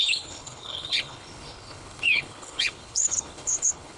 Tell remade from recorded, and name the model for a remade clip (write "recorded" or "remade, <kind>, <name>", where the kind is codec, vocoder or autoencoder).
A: remade, codec, HILCodec